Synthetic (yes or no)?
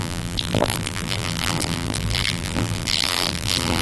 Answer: yes